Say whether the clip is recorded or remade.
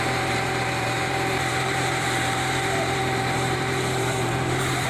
remade